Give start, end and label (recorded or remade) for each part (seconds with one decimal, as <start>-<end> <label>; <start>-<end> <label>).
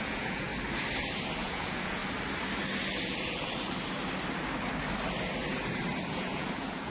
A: 0.0-0.5 remade; 0.5-1.4 recorded; 1.4-2.0 remade; 2.0-6.1 recorded; 6.1-6.9 remade